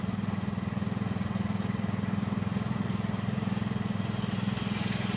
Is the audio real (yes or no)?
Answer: yes